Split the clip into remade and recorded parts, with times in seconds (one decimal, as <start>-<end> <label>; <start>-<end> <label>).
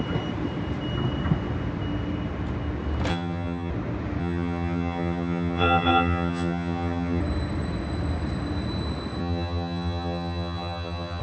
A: 0.0-3.1 recorded; 3.1-3.7 remade; 3.7-4.2 recorded; 4.2-7.2 remade; 7.2-9.2 recorded; 9.2-11.2 remade